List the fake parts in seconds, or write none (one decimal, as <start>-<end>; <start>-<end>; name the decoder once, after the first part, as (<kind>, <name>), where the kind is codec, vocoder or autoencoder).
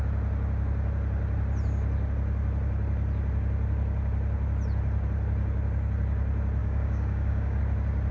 6.6-7.6 (codec, DAC)